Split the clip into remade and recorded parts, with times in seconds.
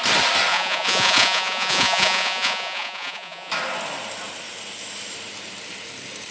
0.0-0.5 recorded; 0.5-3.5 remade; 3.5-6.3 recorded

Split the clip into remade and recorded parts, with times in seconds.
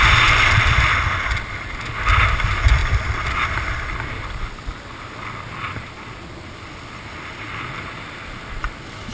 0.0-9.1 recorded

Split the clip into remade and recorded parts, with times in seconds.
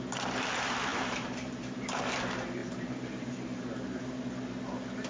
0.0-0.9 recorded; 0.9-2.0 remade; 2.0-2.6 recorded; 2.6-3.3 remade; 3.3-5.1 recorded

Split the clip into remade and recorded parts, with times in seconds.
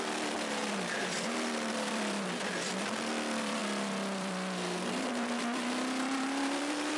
0.0-7.0 remade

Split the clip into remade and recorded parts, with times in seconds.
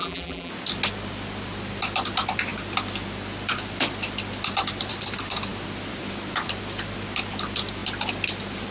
0.0-0.5 remade; 0.5-8.7 recorded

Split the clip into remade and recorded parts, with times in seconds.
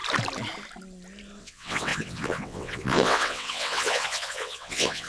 0.0-1.4 recorded; 1.4-5.1 remade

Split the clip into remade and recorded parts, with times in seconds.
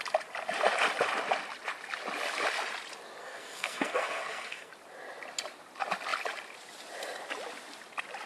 0.0-3.2 recorded; 3.2-4.7 remade; 4.7-8.3 recorded